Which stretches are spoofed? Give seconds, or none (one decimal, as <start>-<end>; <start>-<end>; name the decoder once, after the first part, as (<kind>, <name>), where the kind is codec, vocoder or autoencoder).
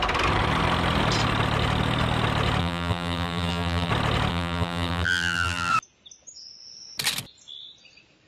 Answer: 2.6-3.9 (vocoder, BigVGAN v2); 4.3-5.7